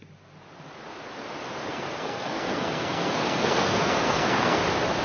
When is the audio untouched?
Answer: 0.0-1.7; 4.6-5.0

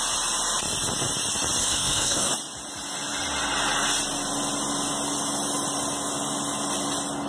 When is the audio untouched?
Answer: 0.0-1.6; 2.3-7.3